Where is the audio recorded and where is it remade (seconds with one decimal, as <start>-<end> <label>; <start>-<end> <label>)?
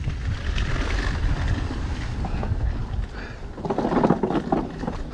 0.0-2.4 remade; 2.4-4.5 recorded; 4.5-5.1 remade